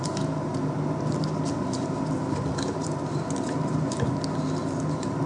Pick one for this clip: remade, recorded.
recorded